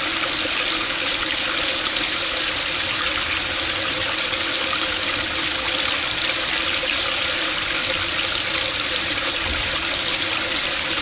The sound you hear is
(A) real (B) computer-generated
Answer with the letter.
A